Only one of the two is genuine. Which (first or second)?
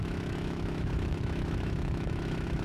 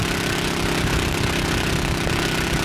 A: second